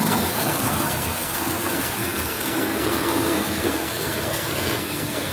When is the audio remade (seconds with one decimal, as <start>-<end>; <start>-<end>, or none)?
0.0-5.3